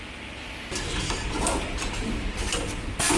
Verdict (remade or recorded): recorded